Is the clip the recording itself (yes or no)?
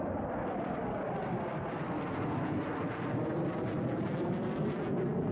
yes